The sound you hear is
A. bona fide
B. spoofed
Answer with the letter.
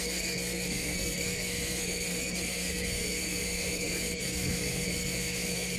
B